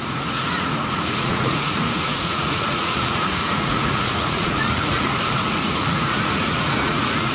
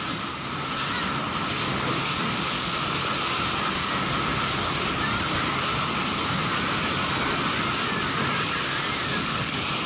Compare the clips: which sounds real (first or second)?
second